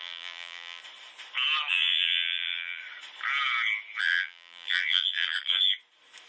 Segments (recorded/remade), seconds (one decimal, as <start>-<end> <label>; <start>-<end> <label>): 0.0-0.8 remade; 0.8-1.7 recorded; 1.7-2.8 remade; 2.8-4.0 recorded; 4.0-5.6 remade; 5.6-6.3 recorded